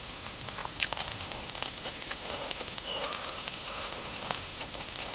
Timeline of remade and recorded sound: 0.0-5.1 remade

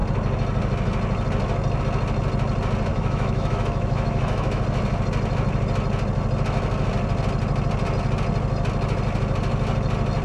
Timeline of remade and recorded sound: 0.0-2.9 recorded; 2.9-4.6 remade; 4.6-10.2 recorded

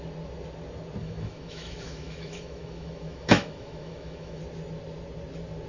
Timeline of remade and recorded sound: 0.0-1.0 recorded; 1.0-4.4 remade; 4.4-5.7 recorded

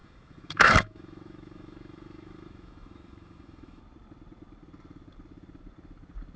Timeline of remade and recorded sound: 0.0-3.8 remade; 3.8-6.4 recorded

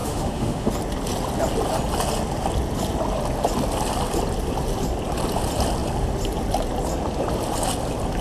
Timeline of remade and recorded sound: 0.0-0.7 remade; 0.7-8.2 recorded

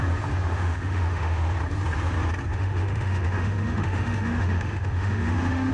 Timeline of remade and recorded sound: 0.0-0.5 recorded; 0.5-1.4 remade; 1.4-2.5 recorded; 2.5-5.7 remade

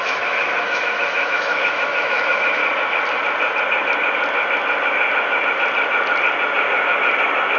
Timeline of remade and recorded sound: 0.0-2.6 remade; 2.6-7.6 recorded

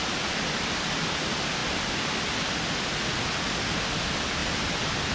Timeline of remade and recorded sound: 0.0-5.1 recorded